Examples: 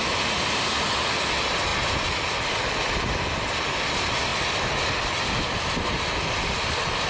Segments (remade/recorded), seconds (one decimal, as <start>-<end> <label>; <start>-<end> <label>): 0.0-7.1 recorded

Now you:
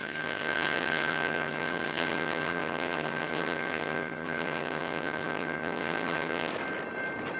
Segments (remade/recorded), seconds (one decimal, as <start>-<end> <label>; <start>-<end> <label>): 0.0-6.5 remade; 6.5-7.4 recorded

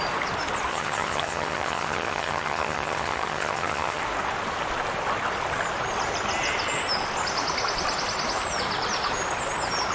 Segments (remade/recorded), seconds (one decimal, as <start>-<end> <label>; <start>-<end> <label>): 0.0-0.7 recorded; 0.7-4.0 remade; 4.0-9.9 recorded

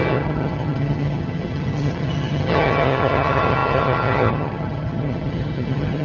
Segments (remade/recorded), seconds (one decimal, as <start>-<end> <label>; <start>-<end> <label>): 0.0-6.0 remade

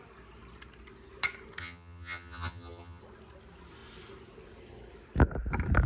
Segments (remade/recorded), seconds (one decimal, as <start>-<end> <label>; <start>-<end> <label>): 0.0-1.6 recorded; 1.6-3.0 remade; 3.0-5.9 recorded

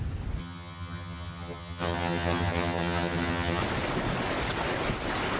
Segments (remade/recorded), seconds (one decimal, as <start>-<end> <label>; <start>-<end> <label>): 0.0-0.4 recorded; 0.4-3.6 remade; 3.6-5.4 recorded

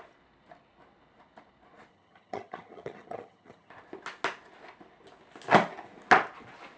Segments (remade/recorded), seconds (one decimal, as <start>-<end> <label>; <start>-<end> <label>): 0.0-1.9 recorded; 1.9-3.7 remade; 3.7-6.8 recorded

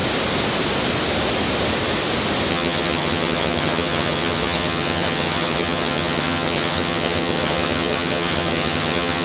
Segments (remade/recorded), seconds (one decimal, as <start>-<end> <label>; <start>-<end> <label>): 0.0-2.5 recorded; 2.5-9.2 remade